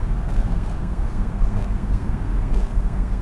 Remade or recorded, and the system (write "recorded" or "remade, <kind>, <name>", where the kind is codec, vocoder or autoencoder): remade, codec, SNAC